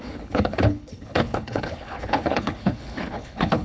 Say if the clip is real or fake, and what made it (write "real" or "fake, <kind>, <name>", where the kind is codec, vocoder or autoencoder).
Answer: fake, codec, HILCodec